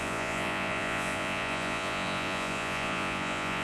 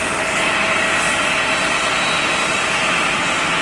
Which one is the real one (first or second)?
second